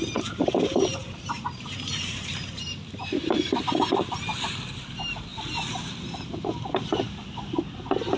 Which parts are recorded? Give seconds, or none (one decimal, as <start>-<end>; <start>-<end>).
0.0-0.9; 3.6-8.2